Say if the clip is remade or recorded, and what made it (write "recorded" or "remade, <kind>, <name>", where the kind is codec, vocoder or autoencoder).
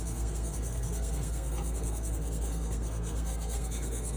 remade, codec, SNAC